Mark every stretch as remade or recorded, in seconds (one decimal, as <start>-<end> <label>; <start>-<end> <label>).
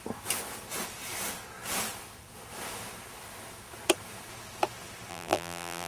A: 0.0-5.1 recorded; 5.1-5.9 remade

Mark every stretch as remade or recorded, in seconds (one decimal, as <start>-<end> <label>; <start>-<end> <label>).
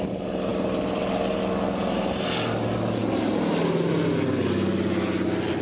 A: 0.0-5.6 recorded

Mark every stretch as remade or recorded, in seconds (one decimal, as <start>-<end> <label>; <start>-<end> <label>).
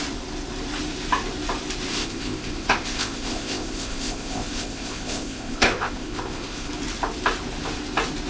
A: 0.0-1.9 recorded; 1.9-6.7 remade; 6.7-8.3 recorded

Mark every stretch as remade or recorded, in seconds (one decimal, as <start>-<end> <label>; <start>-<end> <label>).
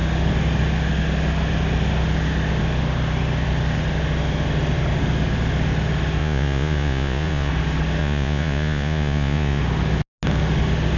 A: 0.0-6.2 recorded; 6.2-7.5 remade; 7.5-8.0 recorded; 8.0-9.6 remade; 9.6-11.0 recorded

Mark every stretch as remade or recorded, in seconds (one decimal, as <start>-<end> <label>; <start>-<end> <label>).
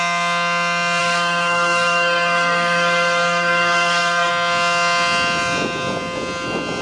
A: 0.0-1.0 recorded; 1.0-4.3 remade; 4.3-6.8 recorded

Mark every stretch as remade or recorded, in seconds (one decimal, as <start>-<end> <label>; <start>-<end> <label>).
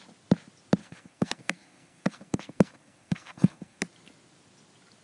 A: 0.0-0.8 recorded; 0.8-3.8 remade; 3.8-5.0 recorded